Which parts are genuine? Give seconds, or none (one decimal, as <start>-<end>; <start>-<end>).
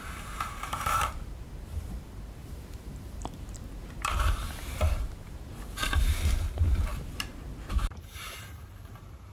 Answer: 6.9-7.7